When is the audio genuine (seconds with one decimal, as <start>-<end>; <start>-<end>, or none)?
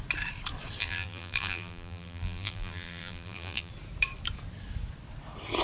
0.0-0.8; 3.7-5.6